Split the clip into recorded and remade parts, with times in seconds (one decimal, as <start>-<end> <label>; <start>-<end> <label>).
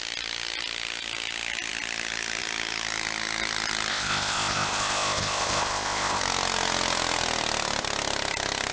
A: 0.0-3.9 recorded; 3.9-6.2 remade; 6.2-8.7 recorded